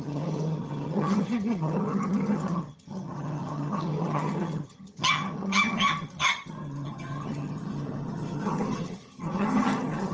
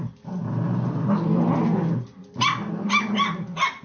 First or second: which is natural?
second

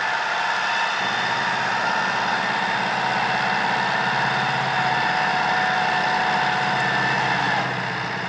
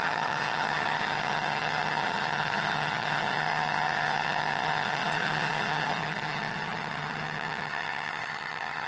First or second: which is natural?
first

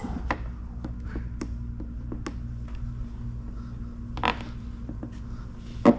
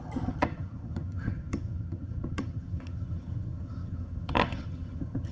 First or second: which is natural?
first